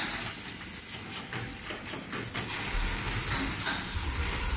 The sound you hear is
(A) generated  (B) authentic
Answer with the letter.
B